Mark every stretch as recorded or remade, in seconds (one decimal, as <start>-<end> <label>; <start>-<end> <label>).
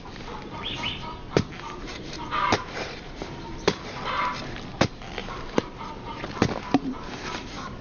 0.0-1.9 recorded; 1.9-4.3 remade; 4.3-5.2 recorded; 5.2-5.7 remade; 5.7-7.8 recorded